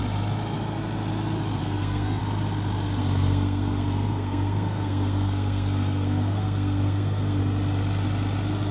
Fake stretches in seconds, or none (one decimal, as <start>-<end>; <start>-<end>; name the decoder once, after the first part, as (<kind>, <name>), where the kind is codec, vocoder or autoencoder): 1.6-2.2 (codec, SNAC); 3.0-7.4